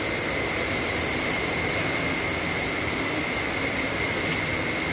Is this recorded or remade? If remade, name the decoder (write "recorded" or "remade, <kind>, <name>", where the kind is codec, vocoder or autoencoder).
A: recorded